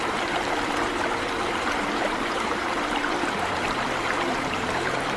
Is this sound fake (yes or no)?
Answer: yes